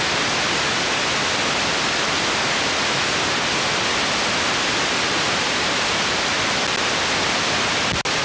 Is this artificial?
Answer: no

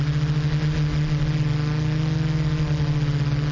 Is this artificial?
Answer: no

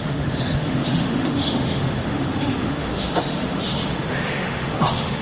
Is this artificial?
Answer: yes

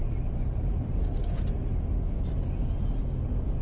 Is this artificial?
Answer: no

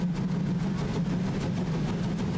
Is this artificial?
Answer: no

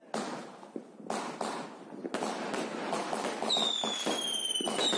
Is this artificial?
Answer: no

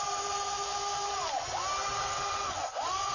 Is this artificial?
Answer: no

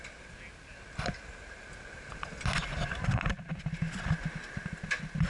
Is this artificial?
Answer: no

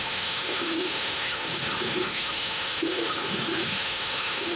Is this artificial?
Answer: yes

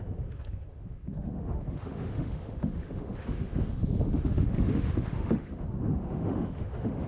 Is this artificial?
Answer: yes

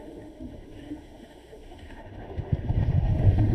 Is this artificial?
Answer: yes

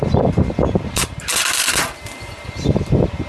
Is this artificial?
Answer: no